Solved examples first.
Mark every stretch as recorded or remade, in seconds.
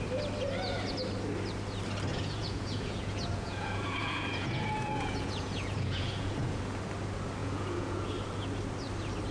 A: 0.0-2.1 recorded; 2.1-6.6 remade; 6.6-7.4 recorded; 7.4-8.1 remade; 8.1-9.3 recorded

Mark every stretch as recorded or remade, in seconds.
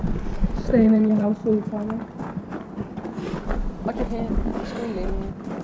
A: 0.0-5.6 recorded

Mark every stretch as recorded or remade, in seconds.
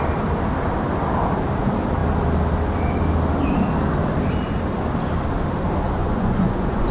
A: 0.0-6.0 recorded; 6.0-6.9 remade